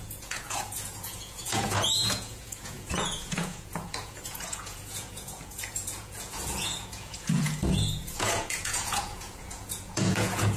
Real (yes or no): no